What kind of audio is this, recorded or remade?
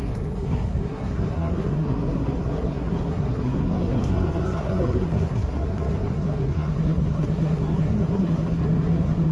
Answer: remade